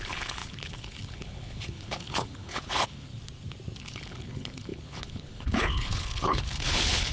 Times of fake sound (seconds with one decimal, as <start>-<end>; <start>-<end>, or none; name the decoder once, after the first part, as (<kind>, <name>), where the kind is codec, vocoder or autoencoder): 0.0-3.1 (codec, HILCodec); 3.8-7.1